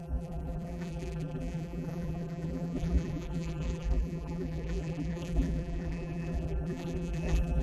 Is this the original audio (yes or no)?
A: no